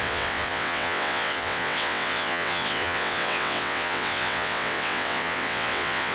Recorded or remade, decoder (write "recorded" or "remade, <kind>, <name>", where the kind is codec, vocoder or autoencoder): remade, vocoder, WaveNeXt